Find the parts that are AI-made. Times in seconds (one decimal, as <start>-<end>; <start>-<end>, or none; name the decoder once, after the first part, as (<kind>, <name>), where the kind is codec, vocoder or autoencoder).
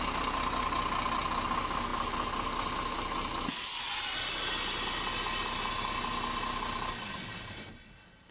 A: none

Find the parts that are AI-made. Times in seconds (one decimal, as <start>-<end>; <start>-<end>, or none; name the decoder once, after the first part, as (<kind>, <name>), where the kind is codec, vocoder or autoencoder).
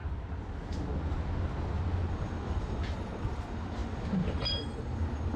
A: 0.0-3.2 (vocoder, BigVGAN v2); 3.8-4.8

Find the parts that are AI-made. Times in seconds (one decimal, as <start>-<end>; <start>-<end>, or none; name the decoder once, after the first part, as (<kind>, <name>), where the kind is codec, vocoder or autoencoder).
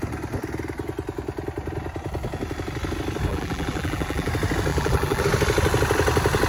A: 3.3-4.3 (vocoder, BigVGAN v2); 4.7-5.2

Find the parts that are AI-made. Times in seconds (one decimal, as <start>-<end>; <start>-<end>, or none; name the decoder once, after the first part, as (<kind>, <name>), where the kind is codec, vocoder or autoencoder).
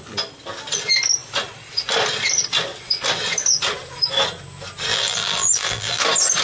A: 4.9-6.0 (vocoder, BigVGAN v2)